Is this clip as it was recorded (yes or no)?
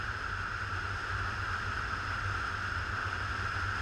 yes